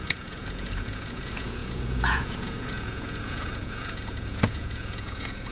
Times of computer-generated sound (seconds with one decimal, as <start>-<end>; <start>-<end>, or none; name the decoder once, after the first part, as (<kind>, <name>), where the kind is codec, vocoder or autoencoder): 0.0-5.5 (vocoder, Vocos)